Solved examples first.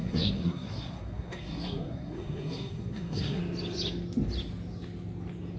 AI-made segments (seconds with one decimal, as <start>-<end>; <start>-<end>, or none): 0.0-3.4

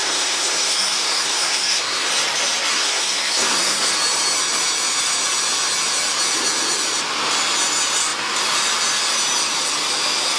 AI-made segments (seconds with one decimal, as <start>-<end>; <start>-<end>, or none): 0.0-2.1; 2.7-3.9

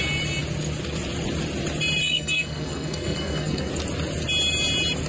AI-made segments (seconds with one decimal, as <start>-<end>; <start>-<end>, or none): 2.0-3.7